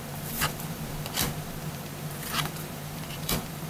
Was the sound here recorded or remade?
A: remade